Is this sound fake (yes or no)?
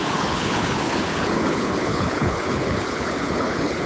yes